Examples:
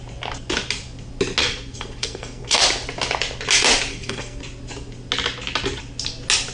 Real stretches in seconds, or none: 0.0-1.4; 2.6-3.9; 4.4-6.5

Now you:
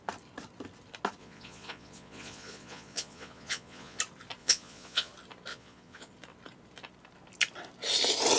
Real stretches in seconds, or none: 0.0-1.2; 4.0-4.4; 5.1-5.5; 6.1-8.4